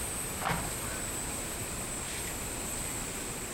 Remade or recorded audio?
recorded